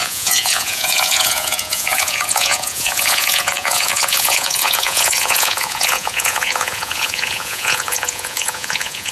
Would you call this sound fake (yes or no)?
yes